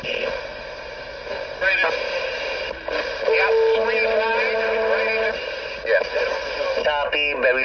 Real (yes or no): yes